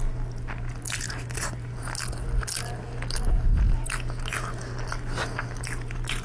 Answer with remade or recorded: recorded